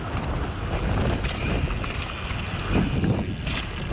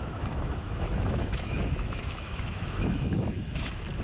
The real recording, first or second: first